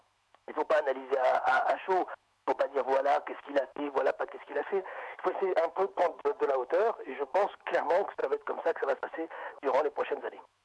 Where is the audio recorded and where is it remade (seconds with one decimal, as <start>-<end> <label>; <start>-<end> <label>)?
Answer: 0.0-5.8 remade; 5.8-6.5 recorded; 6.5-10.6 remade